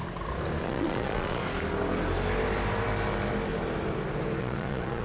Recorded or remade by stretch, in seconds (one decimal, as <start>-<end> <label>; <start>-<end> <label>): 0.0-0.6 recorded; 0.6-1.4 remade; 1.4-4.4 recorded; 4.4-5.0 remade